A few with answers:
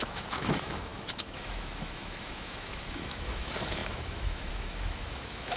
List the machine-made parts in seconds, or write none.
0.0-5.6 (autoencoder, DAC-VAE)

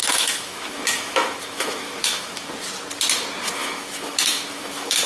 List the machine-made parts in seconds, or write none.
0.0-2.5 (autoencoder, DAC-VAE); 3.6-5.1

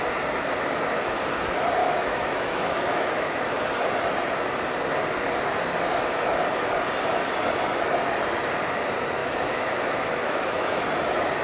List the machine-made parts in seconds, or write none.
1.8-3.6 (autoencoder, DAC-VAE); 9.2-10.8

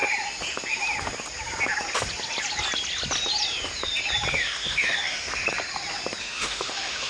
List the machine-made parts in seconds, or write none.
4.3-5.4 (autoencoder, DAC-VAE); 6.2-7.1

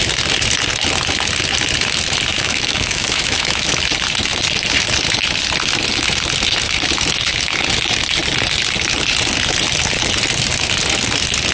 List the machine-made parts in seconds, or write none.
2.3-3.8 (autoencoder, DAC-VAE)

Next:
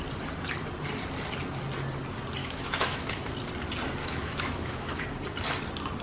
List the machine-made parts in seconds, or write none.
2.4-3.3 (autoencoder, DAC-VAE); 4.0-5.0

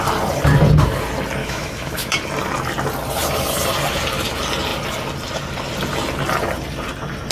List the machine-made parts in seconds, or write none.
1.4-2.1 (autoencoder, DAC-VAE)

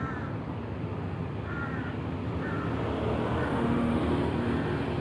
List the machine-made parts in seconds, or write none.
3.5-4.0 (autoencoder, DAC-VAE)